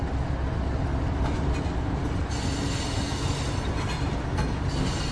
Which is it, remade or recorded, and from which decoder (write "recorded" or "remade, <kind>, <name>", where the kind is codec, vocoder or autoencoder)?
recorded